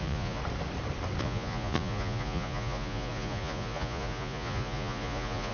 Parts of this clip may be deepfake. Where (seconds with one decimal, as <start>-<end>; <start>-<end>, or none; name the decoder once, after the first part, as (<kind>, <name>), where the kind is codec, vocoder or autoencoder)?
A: 0.0-0.4 (vocoder, Vocos); 1.2-5.5